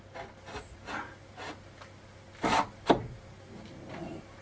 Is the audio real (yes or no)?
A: yes